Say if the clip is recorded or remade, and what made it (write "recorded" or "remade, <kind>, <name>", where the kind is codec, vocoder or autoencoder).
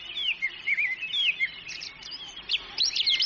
remade, vocoder, BigVGAN v2